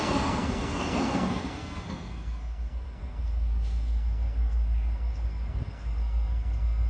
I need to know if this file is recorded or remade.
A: remade